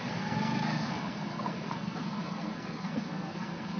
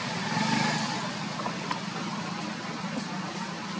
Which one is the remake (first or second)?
first